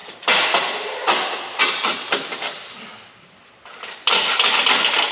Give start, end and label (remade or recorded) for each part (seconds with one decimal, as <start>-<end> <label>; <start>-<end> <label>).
0.0-5.1 recorded